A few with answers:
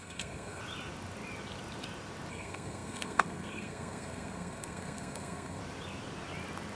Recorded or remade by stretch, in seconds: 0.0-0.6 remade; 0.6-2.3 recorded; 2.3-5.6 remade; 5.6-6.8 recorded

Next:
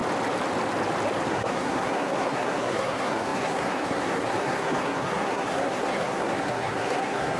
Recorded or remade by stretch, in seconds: 0.0-1.3 recorded; 1.3-7.4 remade

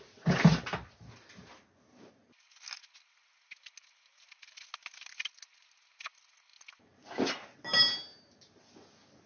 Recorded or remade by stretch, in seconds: 0.0-9.3 recorded

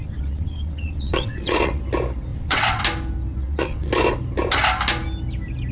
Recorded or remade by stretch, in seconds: 0.0-1.8 remade; 1.8-2.3 recorded; 2.3-2.8 remade; 2.8-3.4 recorded; 3.4-3.9 remade; 3.9-5.7 recorded

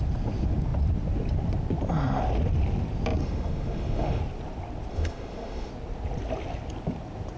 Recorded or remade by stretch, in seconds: 0.0-3.2 recorded; 3.2-4.2 remade; 4.2-4.9 recorded; 4.9-5.7 remade; 5.7-7.4 recorded

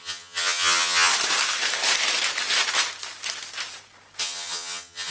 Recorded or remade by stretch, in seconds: 0.0-1.1 remade; 1.1-4.2 recorded; 4.2-5.1 remade

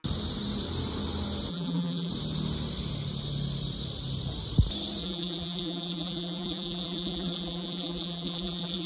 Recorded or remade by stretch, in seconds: 0.0-1.5 recorded; 1.5-2.1 remade; 2.1-5.0 recorded; 5.0-8.9 remade

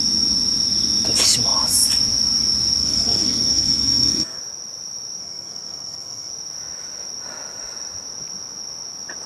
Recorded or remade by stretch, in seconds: 0.0-2.8 recorded; 2.8-4.4 remade; 4.4-5.2 recorded; 5.2-6.3 remade; 6.3-9.3 recorded